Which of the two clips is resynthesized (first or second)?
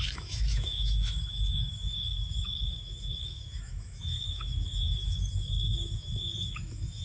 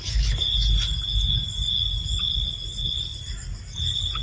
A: first